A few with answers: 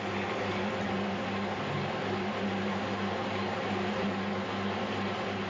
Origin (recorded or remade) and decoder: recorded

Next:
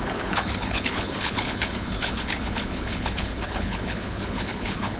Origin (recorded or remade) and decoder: remade, codec, HILCodec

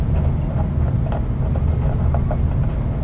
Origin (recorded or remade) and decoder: recorded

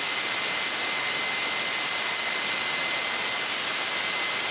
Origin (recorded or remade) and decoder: recorded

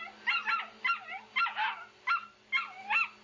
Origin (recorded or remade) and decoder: recorded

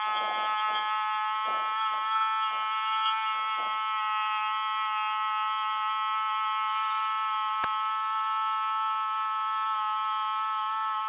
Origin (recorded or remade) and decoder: recorded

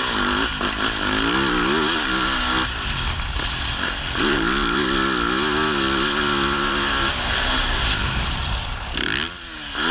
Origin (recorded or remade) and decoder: recorded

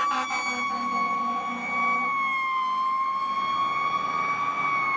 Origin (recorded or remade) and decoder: recorded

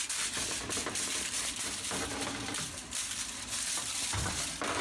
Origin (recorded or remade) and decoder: remade, vocoder, BigVGAN v2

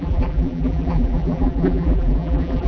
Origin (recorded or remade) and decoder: remade, vocoder, BigVGAN v2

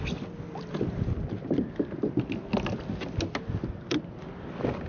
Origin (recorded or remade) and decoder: recorded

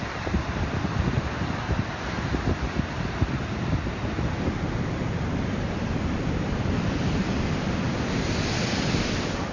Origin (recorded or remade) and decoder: remade, vocoder, BigVGAN v2